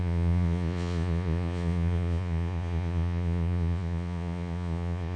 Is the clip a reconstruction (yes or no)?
yes